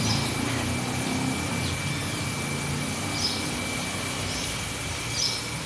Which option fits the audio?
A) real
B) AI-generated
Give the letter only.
A